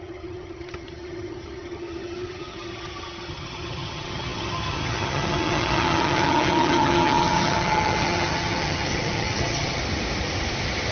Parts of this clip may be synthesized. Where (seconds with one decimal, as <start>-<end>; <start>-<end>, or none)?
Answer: 0.0-9.8